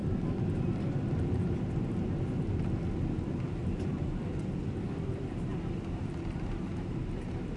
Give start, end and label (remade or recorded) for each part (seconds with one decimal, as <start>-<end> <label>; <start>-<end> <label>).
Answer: 0.0-4.6 recorded; 4.6-5.5 remade; 5.5-6.2 recorded; 6.2-7.6 remade